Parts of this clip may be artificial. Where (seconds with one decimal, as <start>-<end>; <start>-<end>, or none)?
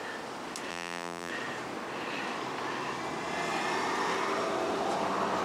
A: 0.7-1.3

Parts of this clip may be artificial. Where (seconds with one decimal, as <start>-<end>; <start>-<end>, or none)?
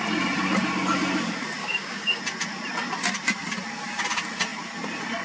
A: 1.6-2.2